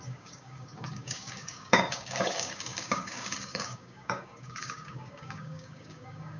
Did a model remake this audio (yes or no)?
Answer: yes